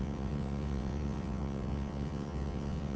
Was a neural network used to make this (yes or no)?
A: yes